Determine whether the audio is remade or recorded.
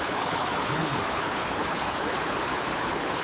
remade